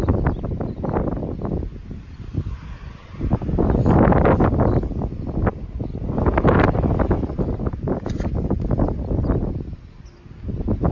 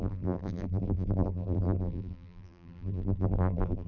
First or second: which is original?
first